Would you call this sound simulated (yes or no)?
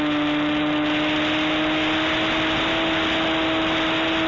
no